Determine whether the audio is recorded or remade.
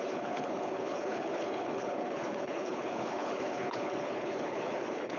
remade